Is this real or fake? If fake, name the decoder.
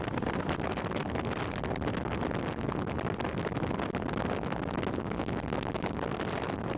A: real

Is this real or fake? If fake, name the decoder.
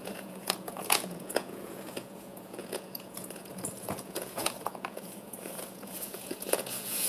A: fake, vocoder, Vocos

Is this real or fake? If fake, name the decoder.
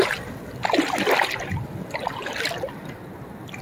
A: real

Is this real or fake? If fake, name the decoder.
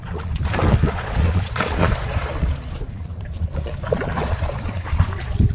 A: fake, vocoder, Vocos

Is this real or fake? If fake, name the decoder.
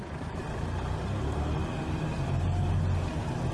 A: real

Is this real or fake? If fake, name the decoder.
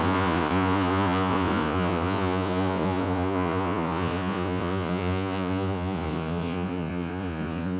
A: fake, vocoder, Vocos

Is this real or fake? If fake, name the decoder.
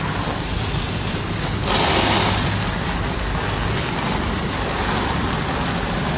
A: real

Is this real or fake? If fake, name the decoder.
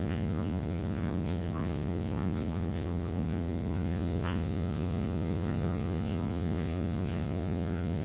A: fake, vocoder, Vocos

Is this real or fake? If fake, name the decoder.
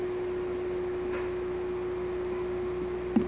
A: real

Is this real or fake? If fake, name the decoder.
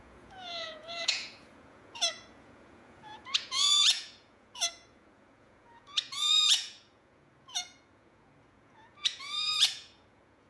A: fake, vocoder, Vocos